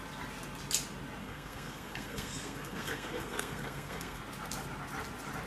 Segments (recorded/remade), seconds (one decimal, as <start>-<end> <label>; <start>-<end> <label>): 0.0-1.2 recorded; 1.2-4.2 remade; 4.2-5.5 recorded